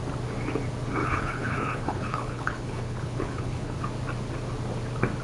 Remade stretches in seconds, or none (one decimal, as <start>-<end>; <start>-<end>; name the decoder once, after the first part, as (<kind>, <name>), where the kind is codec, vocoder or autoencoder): 1.0-3.8 (codec, HILCodec)